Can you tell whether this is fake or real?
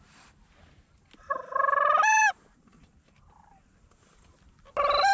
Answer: real